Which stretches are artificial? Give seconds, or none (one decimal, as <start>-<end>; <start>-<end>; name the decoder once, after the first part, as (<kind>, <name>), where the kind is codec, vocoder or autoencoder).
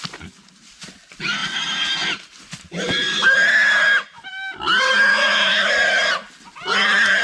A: 5.1-5.7 (autoencoder, DAC-VAE)